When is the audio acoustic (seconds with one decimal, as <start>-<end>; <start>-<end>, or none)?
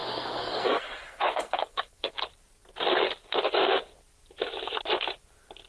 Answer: 2.2-5.7